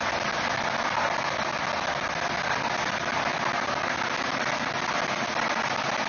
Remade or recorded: recorded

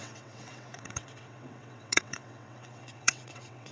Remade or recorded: remade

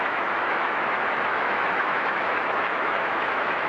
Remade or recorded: remade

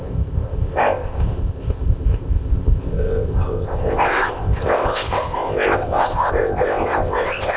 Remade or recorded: remade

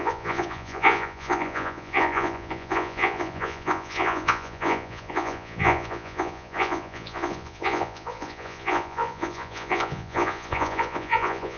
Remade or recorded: remade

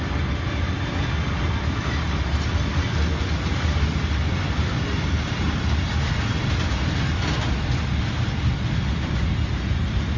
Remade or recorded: recorded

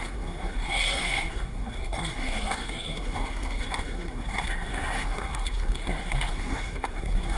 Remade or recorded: remade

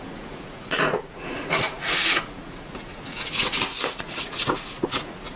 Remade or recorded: remade